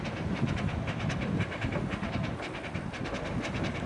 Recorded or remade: recorded